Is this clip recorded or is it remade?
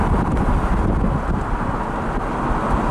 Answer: recorded